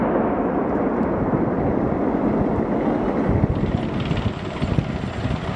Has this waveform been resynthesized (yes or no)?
no